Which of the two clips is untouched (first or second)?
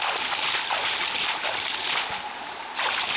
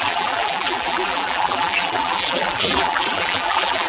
first